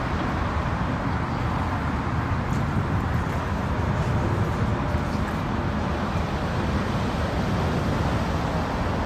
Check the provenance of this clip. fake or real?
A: real